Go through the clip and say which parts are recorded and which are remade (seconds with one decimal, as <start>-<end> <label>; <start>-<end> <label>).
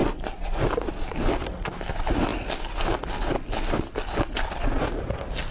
0.0-5.5 recorded